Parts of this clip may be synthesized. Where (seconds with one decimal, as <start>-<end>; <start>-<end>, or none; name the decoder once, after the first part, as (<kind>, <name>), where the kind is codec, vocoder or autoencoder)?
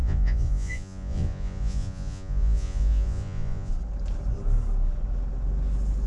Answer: 0.0-3.7 (vocoder, Vocos)